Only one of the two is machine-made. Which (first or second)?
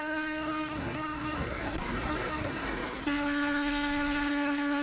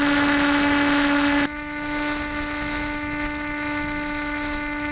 first